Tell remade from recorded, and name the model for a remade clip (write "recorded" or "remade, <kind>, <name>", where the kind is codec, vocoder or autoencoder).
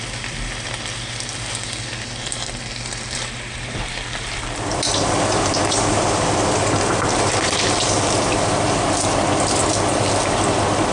remade, vocoder, BigVGAN v2